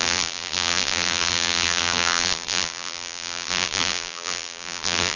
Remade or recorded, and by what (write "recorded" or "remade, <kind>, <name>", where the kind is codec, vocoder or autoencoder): remade, vocoder, BigVGAN v2